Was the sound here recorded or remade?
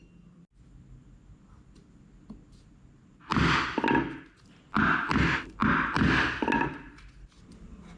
recorded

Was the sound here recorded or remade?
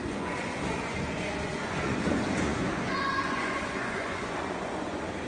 remade